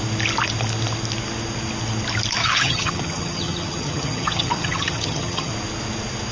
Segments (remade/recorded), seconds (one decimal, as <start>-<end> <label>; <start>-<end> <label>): 0.0-2.4 recorded; 2.4-5.5 remade; 5.5-6.3 recorded